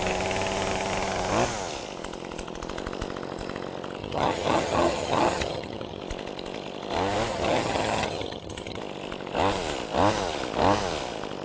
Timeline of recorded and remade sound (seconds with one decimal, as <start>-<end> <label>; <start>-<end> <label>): 0.0-4.0 recorded; 4.0-6.0 remade; 6.0-7.3 recorded; 7.3-8.8 remade; 8.8-11.4 recorded